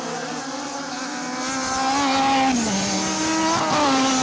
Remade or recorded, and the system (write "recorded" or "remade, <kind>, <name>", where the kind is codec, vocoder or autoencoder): recorded